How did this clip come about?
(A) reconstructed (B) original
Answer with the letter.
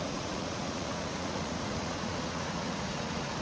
A